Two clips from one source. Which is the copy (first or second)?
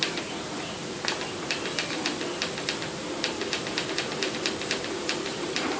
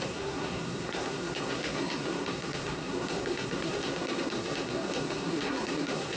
second